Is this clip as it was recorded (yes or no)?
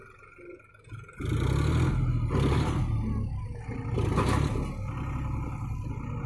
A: yes